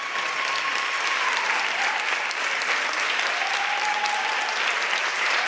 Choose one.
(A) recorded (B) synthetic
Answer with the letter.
A